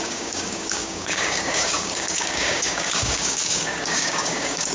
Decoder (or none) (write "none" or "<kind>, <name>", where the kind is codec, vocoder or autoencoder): codec, DAC